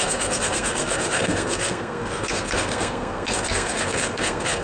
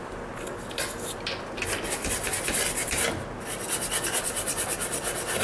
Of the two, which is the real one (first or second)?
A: second